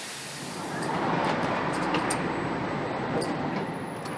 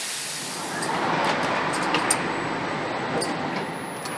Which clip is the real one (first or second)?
second